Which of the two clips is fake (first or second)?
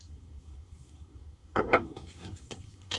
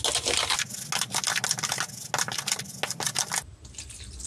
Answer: first